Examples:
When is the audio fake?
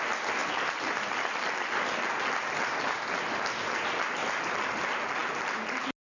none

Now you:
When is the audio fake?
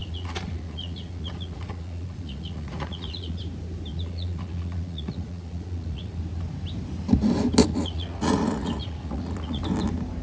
0.0-3.4 (vocoder, Vocos); 3.9-6.2; 7.6-9.6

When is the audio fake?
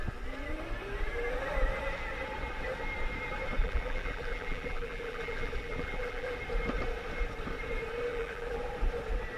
3.6-6.4 (vocoder, BigVGAN v2); 8.1-8.6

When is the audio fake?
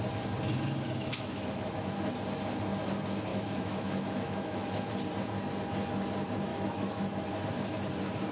1.0-1.9 (autoencoder, DAC-VAE); 3.3-4.9; 6.5-7.0